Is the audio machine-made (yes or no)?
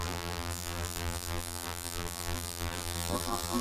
yes